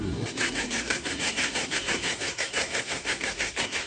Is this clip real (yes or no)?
no